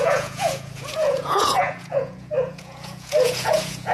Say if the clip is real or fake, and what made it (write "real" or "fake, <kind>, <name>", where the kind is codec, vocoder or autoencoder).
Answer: fake, vocoder, Vocos